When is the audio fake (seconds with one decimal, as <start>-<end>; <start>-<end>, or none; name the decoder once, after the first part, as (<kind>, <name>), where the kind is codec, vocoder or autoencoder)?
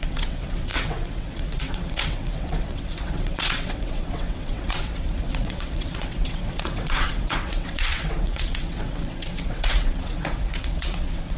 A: 0.0-11.4 (vocoder, WaveNeXt)